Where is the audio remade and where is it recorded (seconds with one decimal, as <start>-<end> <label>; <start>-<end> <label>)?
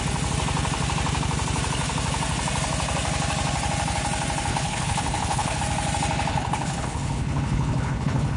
0.0-4.5 recorded; 4.5-5.6 remade; 5.6-6.3 recorded; 6.3-8.4 remade